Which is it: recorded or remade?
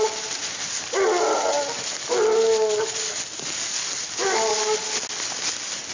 recorded